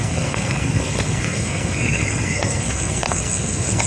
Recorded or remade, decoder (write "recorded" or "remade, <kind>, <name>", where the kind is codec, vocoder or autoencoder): remade, codec, SNAC